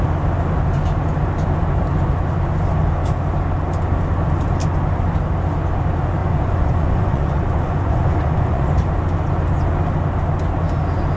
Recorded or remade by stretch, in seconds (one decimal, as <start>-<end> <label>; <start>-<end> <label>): 0.0-6.2 recorded; 6.2-8.7 remade; 8.7-11.2 recorded